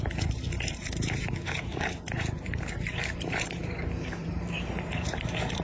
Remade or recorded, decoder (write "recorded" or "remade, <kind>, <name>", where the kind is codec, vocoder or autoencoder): remade, vocoder, BigVGAN v2